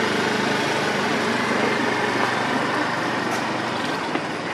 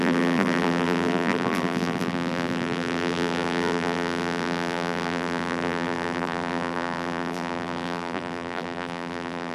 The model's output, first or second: second